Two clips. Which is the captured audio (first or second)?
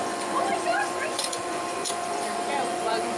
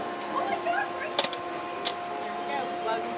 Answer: second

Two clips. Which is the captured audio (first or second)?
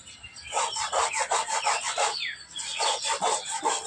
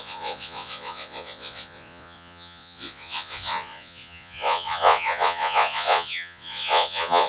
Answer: first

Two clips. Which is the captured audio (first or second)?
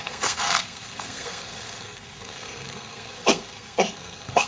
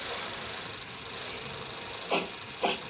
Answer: second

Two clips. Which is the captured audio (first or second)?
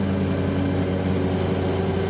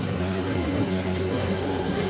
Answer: first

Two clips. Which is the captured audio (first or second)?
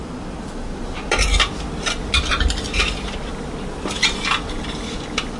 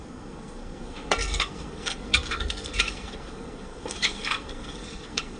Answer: first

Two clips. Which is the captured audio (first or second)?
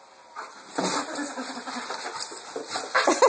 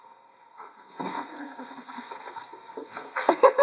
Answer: first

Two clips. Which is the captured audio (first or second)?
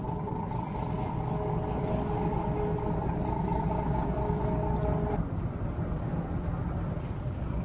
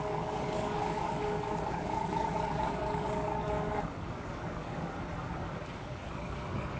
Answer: first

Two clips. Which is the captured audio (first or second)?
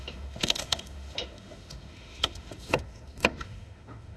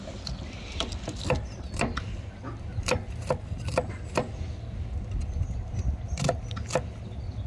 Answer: second